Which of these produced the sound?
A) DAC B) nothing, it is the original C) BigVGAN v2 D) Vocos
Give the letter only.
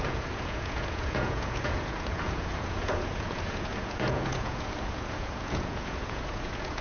D